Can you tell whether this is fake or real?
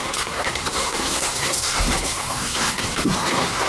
fake